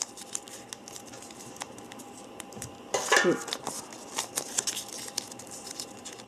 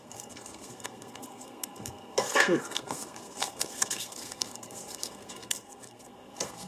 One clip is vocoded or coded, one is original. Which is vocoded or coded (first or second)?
second